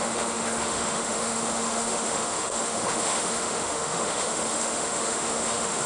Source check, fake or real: fake